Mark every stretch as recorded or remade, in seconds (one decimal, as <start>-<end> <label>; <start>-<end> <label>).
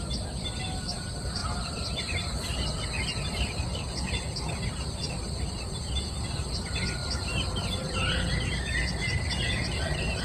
0.0-7.0 recorded; 7.0-8.3 remade; 8.3-10.2 recorded